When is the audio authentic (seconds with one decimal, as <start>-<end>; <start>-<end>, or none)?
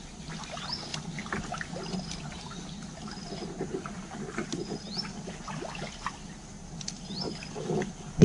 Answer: 0.0-8.2